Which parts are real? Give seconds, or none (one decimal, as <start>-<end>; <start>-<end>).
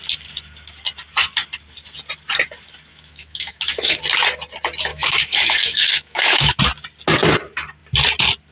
0.0-2.9; 4.0-4.9; 6.6-8.5